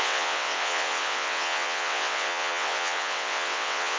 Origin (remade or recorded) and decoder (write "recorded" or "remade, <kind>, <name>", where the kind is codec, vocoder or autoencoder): remade, vocoder, WaveNeXt